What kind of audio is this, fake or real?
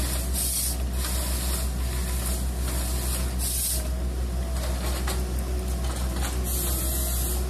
real